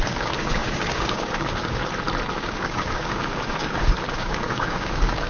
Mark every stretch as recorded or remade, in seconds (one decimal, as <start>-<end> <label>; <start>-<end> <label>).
0.0-1.8 remade; 1.8-2.3 recorded; 2.3-5.3 remade